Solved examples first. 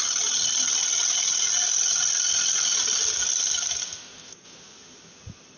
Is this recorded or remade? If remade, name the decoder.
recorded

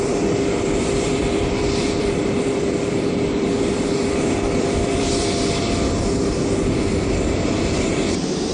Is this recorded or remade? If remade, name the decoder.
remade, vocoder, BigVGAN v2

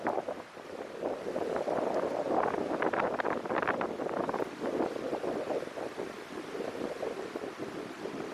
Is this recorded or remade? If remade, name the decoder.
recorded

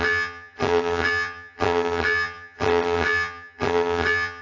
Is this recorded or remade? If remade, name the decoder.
remade, vocoder, HiFi-GAN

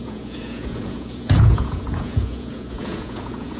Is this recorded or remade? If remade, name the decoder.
remade, vocoder, Vocos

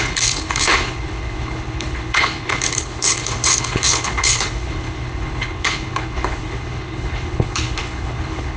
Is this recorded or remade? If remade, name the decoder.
remade, codec, HILCodec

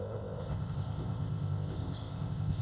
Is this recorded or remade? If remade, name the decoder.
remade, codec, ZipCodec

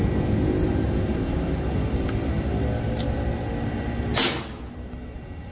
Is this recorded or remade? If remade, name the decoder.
recorded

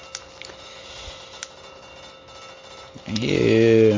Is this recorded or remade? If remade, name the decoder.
recorded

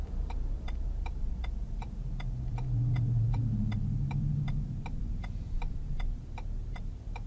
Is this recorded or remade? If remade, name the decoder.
remade, vocoder, BigVGAN v2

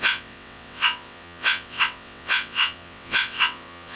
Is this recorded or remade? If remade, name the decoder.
remade, vocoder, WaveNeXt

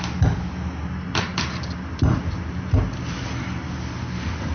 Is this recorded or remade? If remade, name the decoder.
recorded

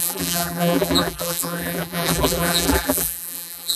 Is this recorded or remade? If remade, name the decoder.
remade, vocoder, BigVGAN v2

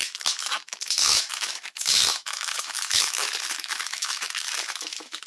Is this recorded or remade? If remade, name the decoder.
remade, autoencoder, DAC-VAE